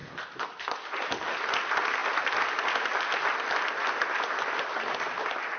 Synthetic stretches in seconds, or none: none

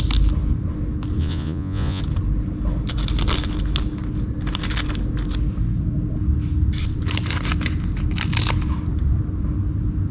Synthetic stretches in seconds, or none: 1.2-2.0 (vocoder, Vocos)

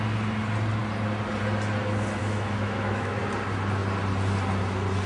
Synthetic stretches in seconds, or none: 2.2-3.2 (autoencoder, DAC-VAE)